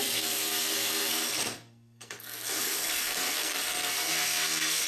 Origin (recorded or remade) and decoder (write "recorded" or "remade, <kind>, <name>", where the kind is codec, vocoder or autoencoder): remade, codec, SNAC